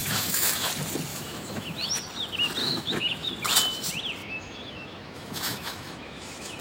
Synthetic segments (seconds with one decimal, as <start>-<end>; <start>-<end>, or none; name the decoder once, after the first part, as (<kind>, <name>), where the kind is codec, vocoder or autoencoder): 0.0-0.7 (autoencoder, DAC-VAE); 1.1-1.9; 2.6-3.3; 4.2-6.6